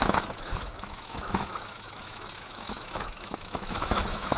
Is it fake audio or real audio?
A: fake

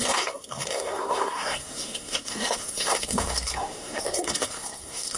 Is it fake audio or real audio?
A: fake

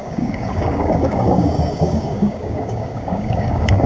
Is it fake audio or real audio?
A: fake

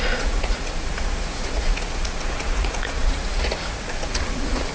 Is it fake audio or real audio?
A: fake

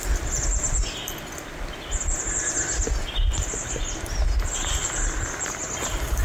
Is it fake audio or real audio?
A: real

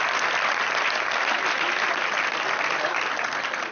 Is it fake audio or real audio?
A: real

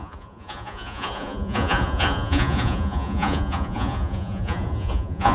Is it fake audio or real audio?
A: fake